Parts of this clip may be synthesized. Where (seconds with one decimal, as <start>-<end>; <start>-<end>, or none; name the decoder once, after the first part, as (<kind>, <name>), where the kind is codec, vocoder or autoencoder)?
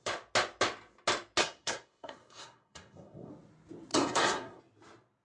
1.4-3.3 (codec, SNAC); 3.9-4.6